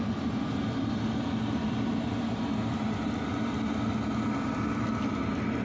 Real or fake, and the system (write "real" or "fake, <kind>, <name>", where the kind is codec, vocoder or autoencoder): real